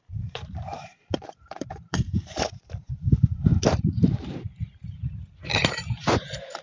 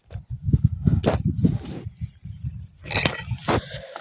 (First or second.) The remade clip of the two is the first